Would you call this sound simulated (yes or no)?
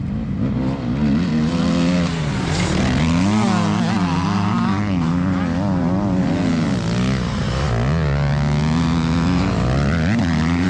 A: no